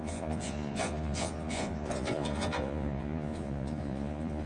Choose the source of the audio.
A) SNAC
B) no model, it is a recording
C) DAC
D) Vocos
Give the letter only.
D